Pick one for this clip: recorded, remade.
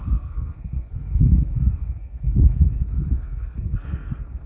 remade